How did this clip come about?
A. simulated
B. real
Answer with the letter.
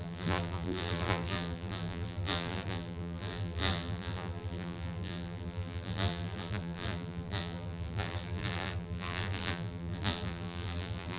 A